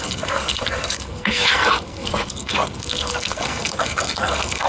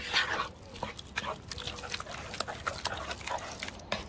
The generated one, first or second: first